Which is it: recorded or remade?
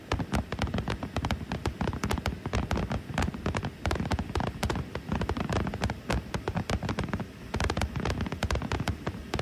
recorded